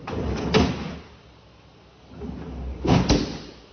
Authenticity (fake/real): real